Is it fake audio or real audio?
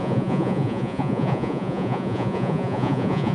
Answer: fake